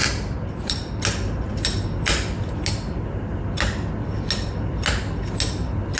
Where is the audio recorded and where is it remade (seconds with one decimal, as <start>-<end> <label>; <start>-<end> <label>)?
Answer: 0.0-1.0 remade; 1.0-6.0 recorded